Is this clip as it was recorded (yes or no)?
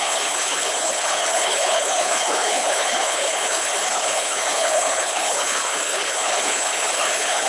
no